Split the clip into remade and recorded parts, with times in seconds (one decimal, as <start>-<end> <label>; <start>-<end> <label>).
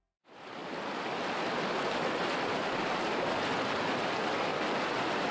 0.0-5.3 recorded